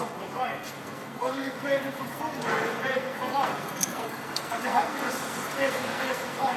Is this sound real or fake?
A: fake